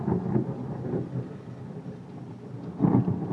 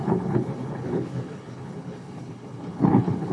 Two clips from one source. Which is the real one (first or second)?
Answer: first